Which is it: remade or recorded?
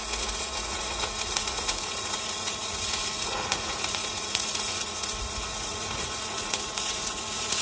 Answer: remade